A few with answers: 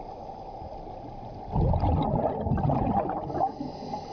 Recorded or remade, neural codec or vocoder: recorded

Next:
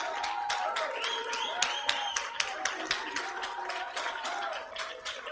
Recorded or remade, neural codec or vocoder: recorded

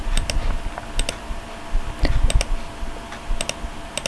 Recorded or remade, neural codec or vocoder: recorded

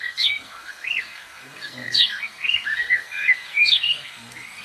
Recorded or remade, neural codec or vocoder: remade, codec, SNAC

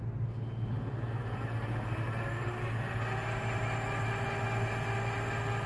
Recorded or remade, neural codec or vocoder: recorded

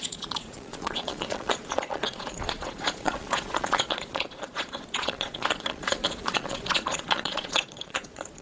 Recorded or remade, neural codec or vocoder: remade, vocoder, Vocos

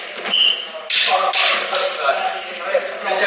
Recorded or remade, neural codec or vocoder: recorded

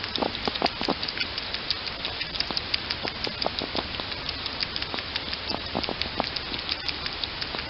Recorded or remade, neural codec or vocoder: recorded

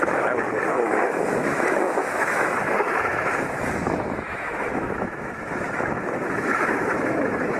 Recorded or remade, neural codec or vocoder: remade, autoencoder, DAC-VAE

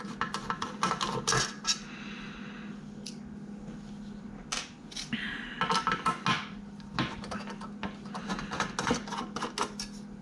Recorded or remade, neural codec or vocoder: recorded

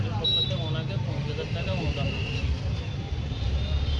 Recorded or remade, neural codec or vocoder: recorded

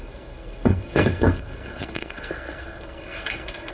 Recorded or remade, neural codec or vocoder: remade, codec, SNAC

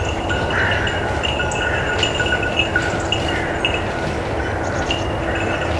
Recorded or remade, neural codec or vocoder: recorded